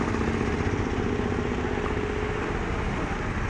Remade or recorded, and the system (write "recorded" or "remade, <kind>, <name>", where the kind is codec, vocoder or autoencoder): recorded